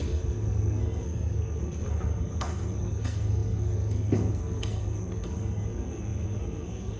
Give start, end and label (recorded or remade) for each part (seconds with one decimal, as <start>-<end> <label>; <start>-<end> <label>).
0.0-7.0 remade